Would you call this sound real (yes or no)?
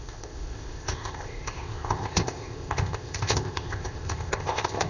no